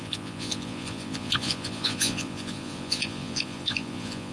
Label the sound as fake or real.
fake